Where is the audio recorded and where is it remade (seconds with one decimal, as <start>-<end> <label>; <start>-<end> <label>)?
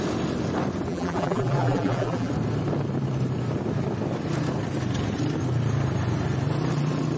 0.0-0.9 recorded; 0.9-2.3 remade; 2.3-7.2 recorded